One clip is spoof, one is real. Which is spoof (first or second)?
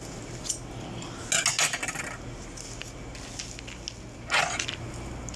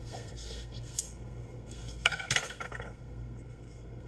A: second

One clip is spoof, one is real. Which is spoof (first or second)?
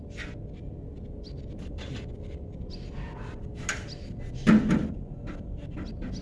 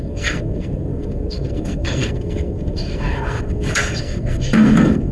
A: second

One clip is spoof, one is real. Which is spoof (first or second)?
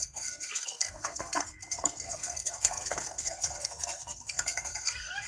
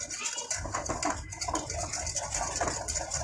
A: first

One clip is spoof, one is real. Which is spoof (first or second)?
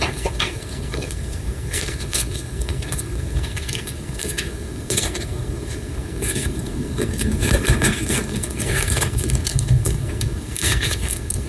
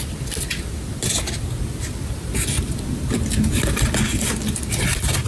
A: first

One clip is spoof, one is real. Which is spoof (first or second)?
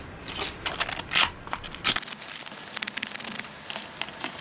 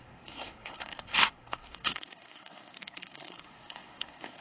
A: second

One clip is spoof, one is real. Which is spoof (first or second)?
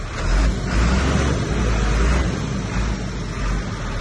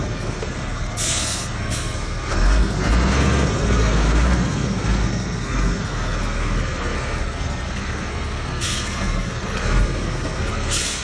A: second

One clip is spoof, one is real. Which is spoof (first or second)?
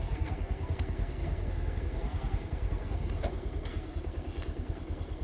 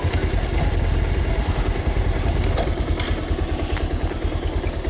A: first